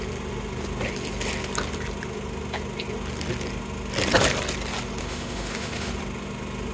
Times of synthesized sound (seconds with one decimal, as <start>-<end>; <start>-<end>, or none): 5.0-5.9